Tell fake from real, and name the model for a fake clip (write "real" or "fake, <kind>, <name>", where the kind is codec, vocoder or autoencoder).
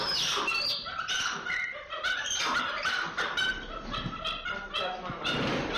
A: fake, vocoder, BigVGAN v2